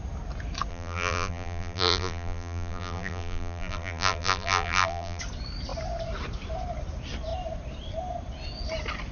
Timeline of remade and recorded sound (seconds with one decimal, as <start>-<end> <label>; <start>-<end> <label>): 0.0-0.7 recorded; 0.7-5.2 remade; 5.2-9.1 recorded